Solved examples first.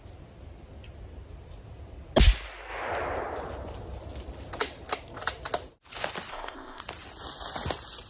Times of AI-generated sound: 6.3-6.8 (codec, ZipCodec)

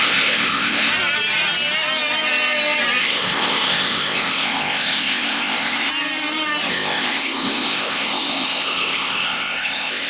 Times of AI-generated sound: 0.0-0.9 (codec, ZipCodec); 3.0-5.9; 6.7-10.1